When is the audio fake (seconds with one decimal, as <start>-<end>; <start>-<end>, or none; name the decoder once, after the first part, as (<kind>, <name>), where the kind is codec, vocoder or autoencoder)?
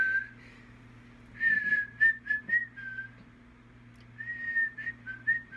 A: none